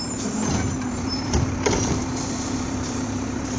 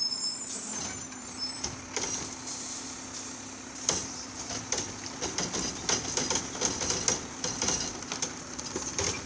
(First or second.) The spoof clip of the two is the first